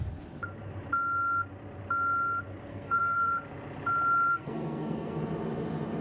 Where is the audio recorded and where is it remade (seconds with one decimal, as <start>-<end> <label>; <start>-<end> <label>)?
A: 0.0-2.7 recorded; 2.7-3.3 remade; 3.3-4.3 recorded; 4.3-5.2 remade; 5.2-6.0 recorded